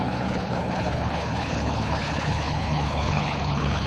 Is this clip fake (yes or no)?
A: yes